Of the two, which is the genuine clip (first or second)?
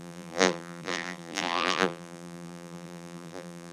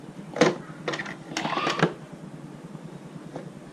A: second